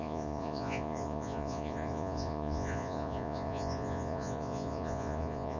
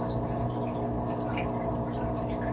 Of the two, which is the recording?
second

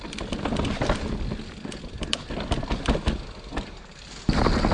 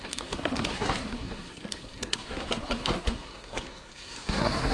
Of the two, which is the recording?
first